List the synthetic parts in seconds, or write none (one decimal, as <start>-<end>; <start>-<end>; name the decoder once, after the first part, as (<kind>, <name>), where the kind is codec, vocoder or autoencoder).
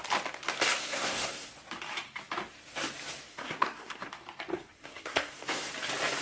0.8-1.5 (codec, SNAC); 3.3-4.1; 4.5-5.7